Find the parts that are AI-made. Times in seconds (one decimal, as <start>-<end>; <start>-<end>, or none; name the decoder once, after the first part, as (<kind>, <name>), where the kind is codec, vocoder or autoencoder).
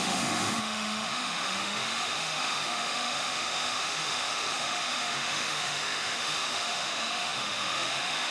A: 0.0-8.3 (autoencoder, DAC-VAE)